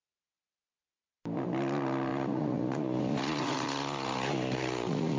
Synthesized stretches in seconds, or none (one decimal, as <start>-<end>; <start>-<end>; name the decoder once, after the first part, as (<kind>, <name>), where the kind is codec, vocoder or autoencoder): 2.1-5.2 (vocoder, Vocos)